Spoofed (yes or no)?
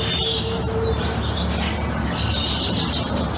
no